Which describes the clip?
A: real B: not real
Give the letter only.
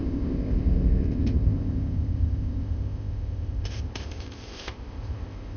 B